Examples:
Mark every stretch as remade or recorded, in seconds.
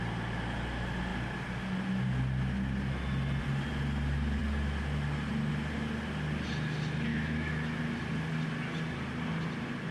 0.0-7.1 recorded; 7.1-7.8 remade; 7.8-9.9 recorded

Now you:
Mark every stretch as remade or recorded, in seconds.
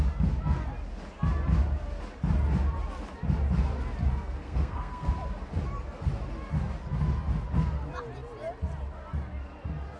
0.0-4.1 recorded; 4.1-5.1 remade; 5.1-10.0 recorded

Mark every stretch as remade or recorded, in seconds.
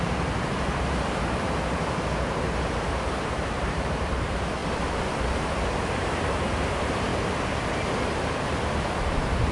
0.0-4.6 remade; 4.6-5.2 recorded; 5.2-7.1 remade; 7.1-8.7 recorded; 8.7-9.5 remade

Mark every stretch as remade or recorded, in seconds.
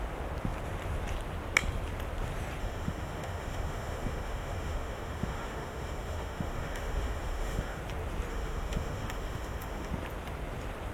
0.0-2.6 recorded; 2.6-7.8 remade; 7.8-8.3 recorded; 8.3-9.9 remade; 9.9-10.9 recorded